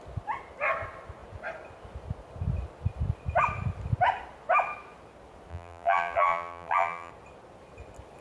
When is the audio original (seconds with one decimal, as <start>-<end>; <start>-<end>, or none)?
0.0-5.5; 7.1-8.2